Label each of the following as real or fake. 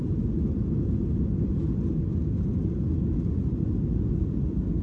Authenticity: real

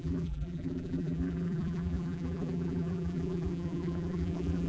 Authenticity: fake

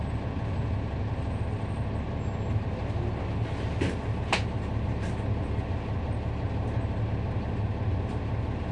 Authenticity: real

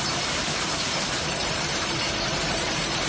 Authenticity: fake